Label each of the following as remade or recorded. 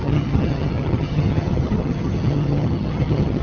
remade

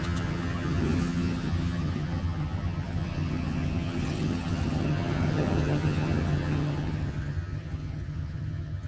remade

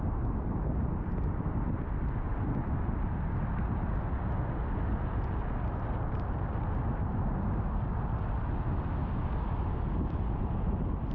recorded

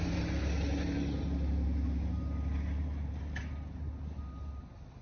recorded